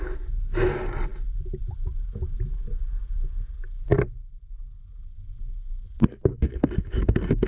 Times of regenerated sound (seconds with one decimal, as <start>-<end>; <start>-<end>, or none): 6.3-7.5

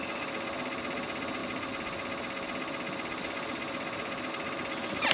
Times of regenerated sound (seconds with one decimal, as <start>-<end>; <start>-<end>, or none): none

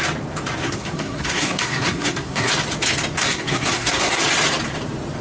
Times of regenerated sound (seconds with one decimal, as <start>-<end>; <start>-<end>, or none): 0.6-2.5; 3.2-4.2

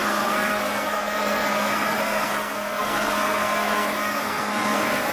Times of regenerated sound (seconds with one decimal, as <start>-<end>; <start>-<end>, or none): 0.0-5.1

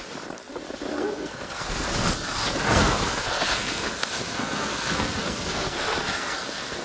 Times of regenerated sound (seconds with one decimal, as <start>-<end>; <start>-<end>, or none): 0.9-6.8